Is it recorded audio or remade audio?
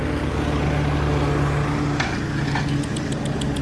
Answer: recorded